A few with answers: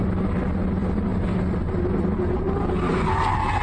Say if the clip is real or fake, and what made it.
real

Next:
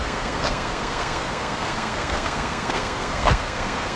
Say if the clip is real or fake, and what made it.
fake, codec, SNAC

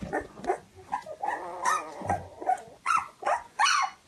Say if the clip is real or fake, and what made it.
fake, vocoder, Vocos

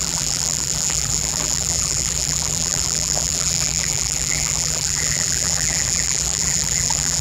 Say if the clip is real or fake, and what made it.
fake, vocoder, BigVGAN v2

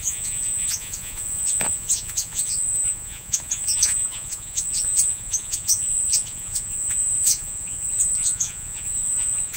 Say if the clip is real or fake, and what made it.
fake, vocoder, Vocos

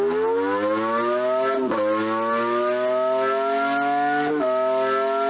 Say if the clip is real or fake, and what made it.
real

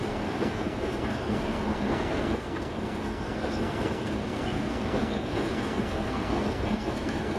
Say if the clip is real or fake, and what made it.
fake, codec, SNAC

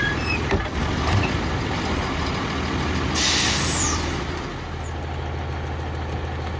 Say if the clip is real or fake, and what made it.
real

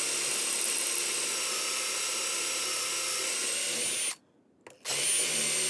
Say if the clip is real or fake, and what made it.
real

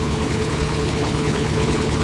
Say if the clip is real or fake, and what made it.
fake, codec, HILCodec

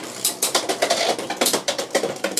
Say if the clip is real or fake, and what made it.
real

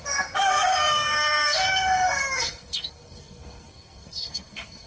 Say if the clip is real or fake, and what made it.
fake, codec, SNAC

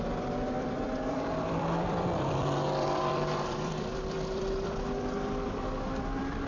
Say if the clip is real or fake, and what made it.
fake, vocoder, BigVGAN v2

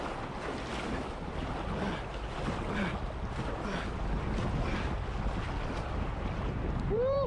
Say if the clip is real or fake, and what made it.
real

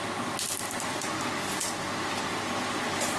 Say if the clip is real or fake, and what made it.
real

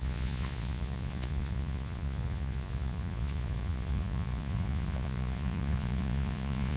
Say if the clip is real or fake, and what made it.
fake, vocoder, Vocos